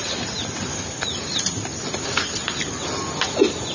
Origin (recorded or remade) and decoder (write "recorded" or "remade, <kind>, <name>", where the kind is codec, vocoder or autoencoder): recorded